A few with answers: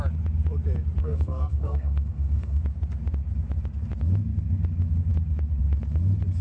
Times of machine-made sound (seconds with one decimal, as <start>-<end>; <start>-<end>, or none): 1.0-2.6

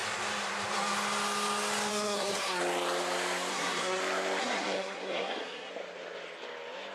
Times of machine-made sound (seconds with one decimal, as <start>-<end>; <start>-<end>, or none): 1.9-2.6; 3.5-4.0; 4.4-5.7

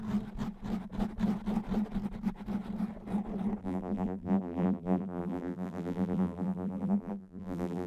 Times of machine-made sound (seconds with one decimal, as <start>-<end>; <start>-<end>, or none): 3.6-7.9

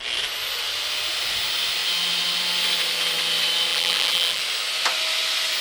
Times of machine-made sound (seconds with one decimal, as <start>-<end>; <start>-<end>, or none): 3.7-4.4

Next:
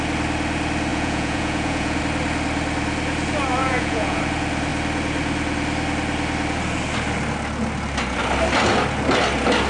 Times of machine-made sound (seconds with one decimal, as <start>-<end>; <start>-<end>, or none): 0.9-2.0; 3.6-4.2